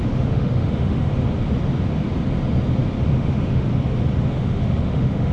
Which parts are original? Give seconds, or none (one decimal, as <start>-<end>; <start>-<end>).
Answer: 1.1-3.1; 3.7-4.3